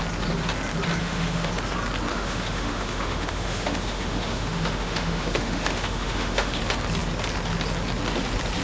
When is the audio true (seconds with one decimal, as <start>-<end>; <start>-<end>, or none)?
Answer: 0.0-1.0; 1.5-2.1; 6.6-8.6